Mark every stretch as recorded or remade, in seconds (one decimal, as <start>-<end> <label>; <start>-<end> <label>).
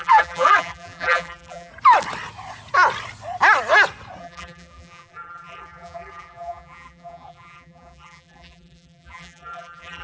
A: 0.0-1.7 remade; 1.7-4.2 recorded; 4.2-10.0 remade